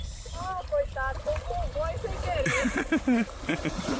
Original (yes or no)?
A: yes